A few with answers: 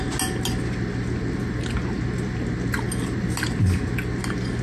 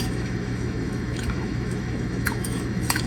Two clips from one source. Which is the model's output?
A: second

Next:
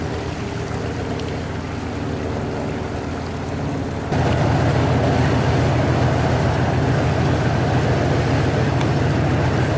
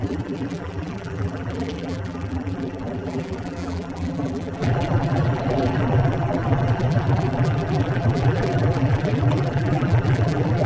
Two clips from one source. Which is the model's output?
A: second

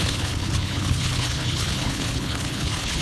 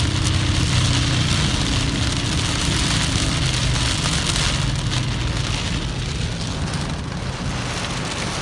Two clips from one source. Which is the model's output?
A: first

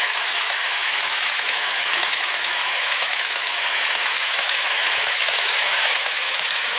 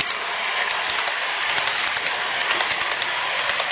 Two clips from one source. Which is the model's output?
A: first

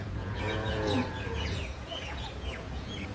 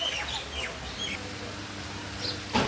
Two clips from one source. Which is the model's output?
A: first